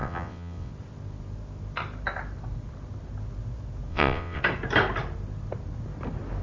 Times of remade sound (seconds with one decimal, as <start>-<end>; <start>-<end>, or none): 0.0-0.7; 3.9-4.4